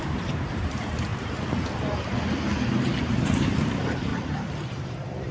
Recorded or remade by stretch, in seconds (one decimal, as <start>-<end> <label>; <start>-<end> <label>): 0.0-1.1 remade; 1.1-3.0 recorded; 3.0-4.1 remade; 4.1-4.7 recorded; 4.7-5.3 remade